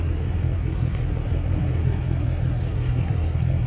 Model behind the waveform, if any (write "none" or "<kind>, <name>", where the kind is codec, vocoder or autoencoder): codec, SNAC